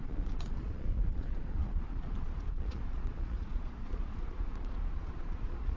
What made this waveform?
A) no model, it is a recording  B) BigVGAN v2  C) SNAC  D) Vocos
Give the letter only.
D